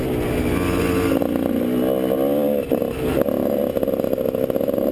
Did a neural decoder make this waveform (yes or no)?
no